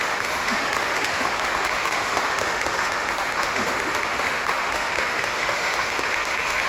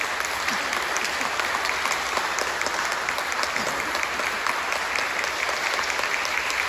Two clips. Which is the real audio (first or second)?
second